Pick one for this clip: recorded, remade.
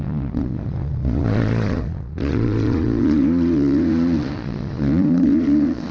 remade